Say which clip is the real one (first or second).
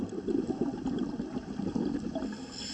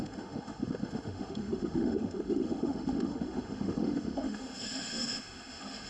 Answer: first